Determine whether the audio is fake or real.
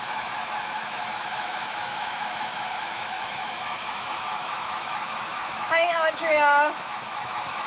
fake